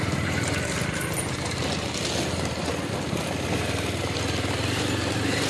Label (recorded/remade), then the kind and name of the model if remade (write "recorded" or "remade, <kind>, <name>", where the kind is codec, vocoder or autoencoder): recorded